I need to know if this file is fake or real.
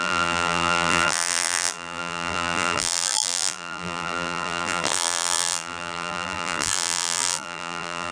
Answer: fake